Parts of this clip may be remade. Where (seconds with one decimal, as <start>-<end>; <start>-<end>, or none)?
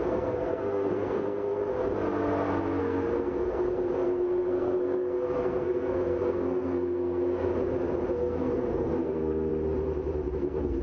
0.0-1.6; 2.8-7.5; 8.1-9.5; 10.3-10.8